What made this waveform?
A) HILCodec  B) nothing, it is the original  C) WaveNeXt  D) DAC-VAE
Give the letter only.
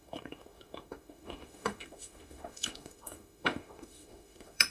D